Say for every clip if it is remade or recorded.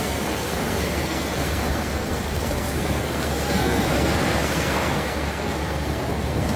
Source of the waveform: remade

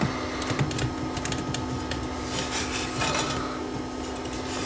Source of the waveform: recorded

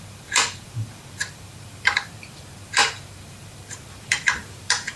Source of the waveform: remade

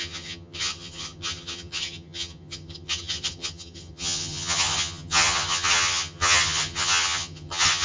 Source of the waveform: remade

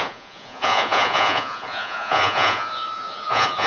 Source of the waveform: remade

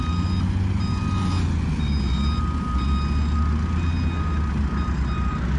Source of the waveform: recorded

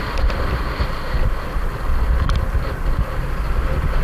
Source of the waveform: recorded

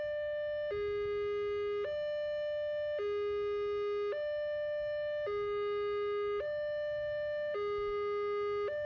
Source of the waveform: recorded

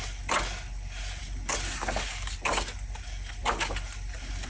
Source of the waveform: recorded